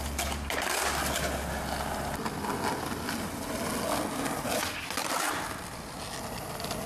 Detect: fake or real real